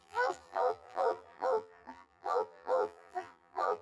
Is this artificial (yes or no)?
yes